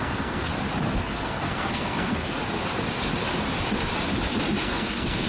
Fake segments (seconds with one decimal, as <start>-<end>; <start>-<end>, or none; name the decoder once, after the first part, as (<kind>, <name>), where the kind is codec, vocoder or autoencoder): 0.0-0.5 (codec, SNAC); 1.0-2.4; 4.6-5.3